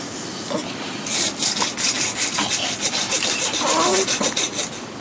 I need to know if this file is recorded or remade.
recorded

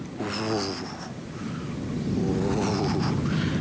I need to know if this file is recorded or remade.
recorded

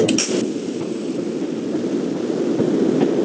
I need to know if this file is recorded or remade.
recorded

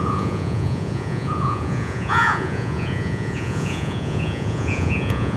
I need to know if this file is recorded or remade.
remade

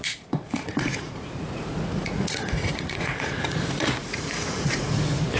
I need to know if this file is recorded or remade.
remade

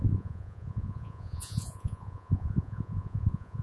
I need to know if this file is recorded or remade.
remade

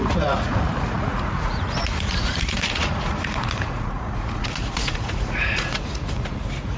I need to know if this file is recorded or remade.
remade